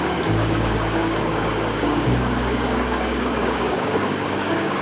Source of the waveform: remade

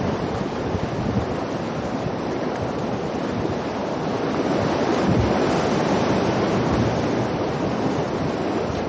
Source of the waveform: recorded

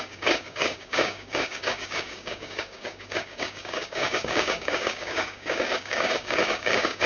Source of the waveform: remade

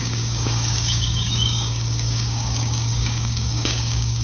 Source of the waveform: remade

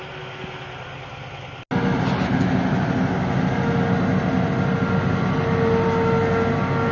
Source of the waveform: recorded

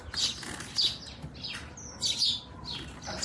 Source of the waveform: recorded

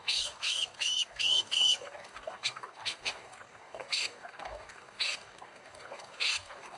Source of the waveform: remade